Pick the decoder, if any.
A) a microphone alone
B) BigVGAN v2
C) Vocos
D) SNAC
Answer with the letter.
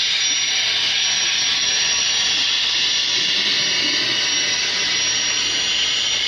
A